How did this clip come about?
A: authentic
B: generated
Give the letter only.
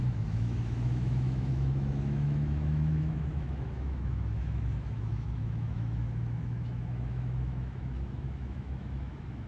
B